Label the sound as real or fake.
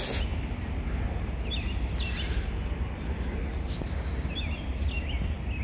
real